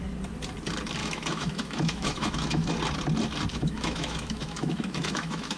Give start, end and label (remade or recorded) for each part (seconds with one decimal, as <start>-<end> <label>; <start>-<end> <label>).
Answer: 0.0-1.0 recorded; 1.0-2.7 remade; 2.7-3.5 recorded; 3.5-5.6 remade